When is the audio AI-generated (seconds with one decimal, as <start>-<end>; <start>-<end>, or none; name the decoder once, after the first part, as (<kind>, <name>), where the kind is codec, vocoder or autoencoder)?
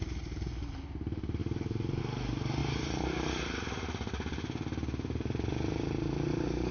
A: 1.4-2.0 (vocoder, BigVGAN v2); 2.6-6.7